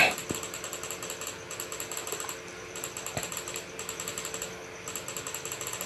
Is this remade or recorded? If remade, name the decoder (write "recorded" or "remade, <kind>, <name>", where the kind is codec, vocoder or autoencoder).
recorded